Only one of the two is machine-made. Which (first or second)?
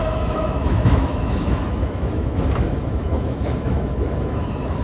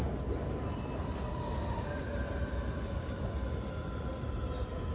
first